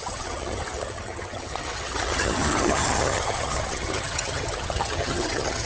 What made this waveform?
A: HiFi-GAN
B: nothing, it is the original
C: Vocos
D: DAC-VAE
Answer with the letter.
A